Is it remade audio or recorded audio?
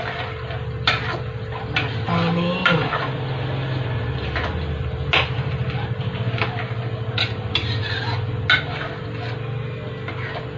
recorded